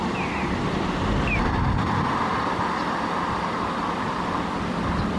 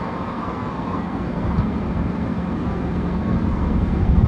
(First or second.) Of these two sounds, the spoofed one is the second